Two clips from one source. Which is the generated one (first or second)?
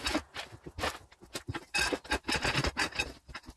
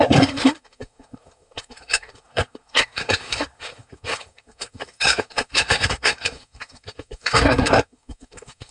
second